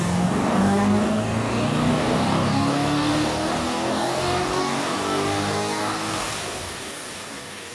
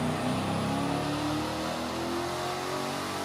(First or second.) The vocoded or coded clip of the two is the first